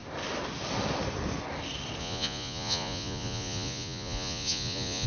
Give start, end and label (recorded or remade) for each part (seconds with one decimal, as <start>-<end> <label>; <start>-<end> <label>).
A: 0.0-2.0 recorded; 2.0-5.1 remade